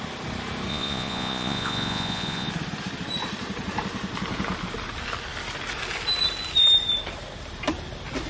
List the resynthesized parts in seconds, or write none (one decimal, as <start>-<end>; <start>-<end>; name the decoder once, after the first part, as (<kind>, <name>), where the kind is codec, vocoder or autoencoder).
0.7-2.5 (vocoder, Vocos)